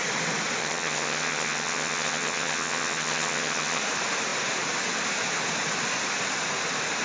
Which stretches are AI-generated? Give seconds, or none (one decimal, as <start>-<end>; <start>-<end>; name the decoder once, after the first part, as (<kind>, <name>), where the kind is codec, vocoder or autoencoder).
0.6-3.8 (vocoder, HiFi-GAN)